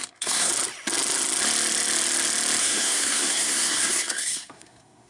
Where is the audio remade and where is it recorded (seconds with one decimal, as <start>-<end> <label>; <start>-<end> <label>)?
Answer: 0.0-0.5 remade; 0.5-2.6 recorded; 2.6-5.1 remade